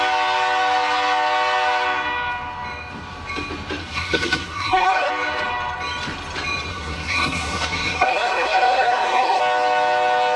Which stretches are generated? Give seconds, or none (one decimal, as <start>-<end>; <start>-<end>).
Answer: 3.8-5.1; 6.7-9.4